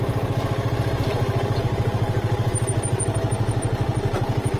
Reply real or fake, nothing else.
real